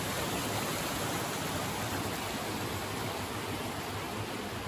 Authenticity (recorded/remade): recorded